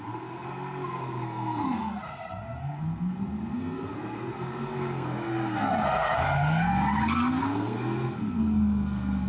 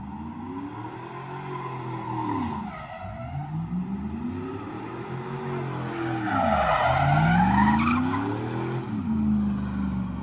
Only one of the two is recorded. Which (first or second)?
second